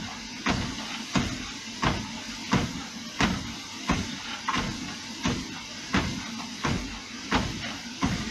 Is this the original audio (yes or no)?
yes